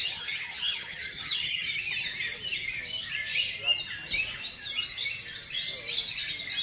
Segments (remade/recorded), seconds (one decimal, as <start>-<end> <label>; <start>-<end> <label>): 0.0-1.7 remade; 1.7-6.6 recorded